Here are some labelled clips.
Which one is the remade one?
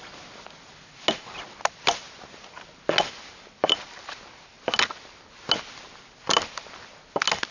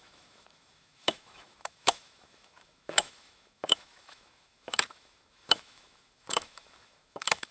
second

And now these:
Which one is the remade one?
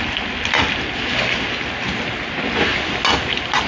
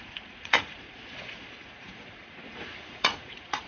second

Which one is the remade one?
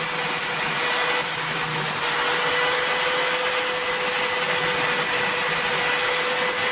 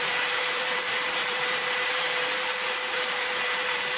second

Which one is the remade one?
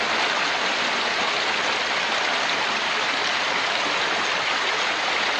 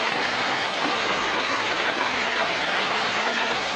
second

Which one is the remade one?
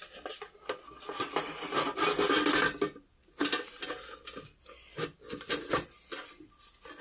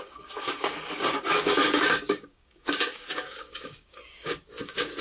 second